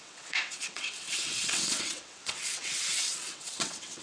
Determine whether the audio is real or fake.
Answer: fake